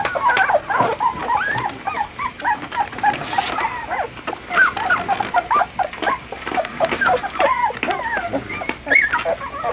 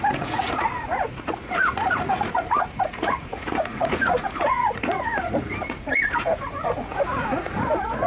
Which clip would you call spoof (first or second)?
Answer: second